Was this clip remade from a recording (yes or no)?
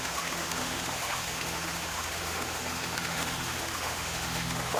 yes